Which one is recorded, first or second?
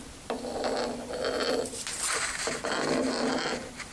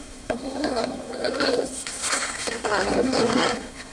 first